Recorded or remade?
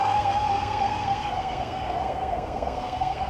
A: remade